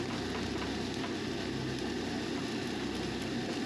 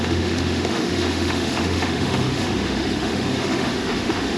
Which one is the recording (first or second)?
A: first